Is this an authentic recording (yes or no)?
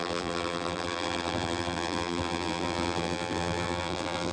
no